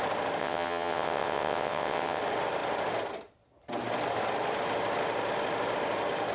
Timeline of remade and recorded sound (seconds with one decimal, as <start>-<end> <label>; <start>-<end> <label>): 0.0-0.4 recorded; 0.4-2.2 remade; 2.2-6.3 recorded

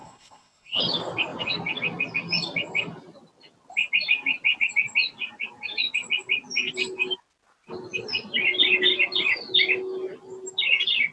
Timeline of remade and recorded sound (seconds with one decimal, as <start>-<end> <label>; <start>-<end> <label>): 0.0-0.8 remade; 0.8-11.1 recorded

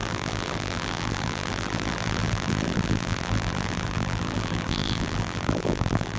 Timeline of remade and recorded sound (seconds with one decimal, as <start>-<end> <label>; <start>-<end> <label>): 0.0-6.2 remade

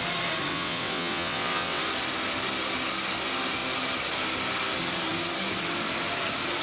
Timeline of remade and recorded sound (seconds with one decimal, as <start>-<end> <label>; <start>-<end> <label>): 0.0-0.5 recorded; 0.5-1.8 remade; 1.8-6.6 recorded

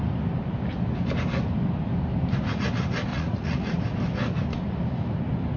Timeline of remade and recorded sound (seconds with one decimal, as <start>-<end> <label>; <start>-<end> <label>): 0.0-3.1 recorded; 3.1-3.8 remade; 3.8-5.6 recorded

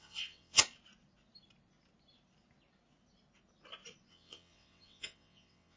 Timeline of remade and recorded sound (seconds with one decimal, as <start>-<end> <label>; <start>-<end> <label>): 0.0-0.6 remade; 0.6-4.1 recorded; 4.1-5.8 remade

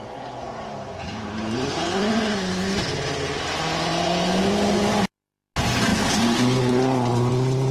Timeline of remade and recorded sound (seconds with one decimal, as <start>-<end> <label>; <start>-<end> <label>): 0.0-1.4 recorded; 1.4-2.2 remade; 2.2-7.7 recorded